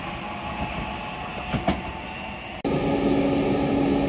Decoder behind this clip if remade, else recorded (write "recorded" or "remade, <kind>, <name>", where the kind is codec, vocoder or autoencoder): recorded